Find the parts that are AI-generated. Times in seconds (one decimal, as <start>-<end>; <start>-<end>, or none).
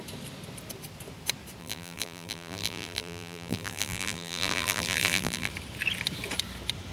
1.6-5.5